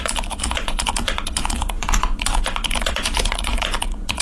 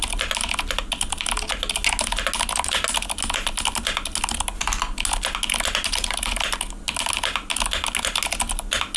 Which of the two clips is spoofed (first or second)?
first